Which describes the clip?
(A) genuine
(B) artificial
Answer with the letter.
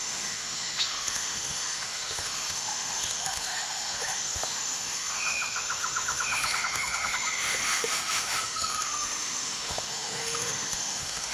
B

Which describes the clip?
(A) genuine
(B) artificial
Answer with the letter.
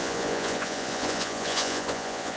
B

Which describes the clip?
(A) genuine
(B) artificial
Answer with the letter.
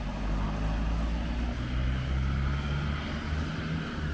A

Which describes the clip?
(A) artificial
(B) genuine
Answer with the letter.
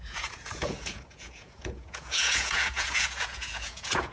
A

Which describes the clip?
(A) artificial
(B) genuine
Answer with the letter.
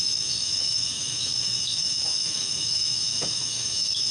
A